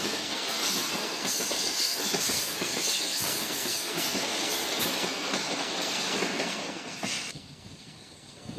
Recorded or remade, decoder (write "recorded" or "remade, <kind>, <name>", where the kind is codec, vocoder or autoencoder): remade, codec, SNAC